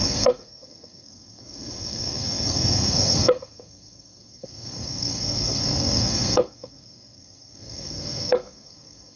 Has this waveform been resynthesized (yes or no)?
yes